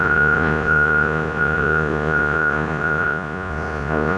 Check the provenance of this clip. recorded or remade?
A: remade